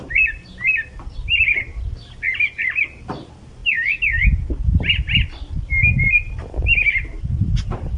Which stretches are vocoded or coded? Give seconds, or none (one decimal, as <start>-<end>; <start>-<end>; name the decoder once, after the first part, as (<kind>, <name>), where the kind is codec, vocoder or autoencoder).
none